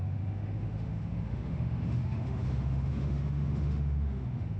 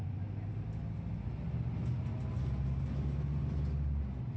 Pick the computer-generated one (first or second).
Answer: first